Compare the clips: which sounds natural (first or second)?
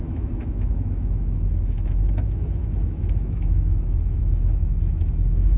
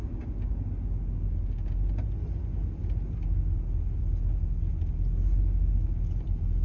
second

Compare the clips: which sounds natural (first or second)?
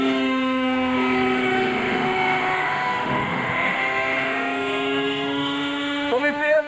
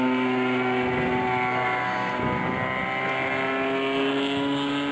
second